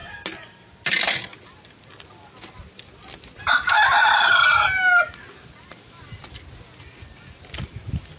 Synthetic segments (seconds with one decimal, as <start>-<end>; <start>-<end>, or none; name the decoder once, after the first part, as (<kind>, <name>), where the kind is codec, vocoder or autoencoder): none